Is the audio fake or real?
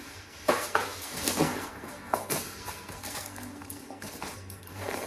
fake